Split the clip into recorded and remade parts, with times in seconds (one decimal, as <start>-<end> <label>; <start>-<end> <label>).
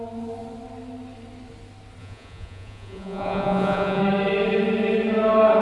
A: 0.0-2.0 recorded; 2.0-4.0 remade; 4.0-5.6 recorded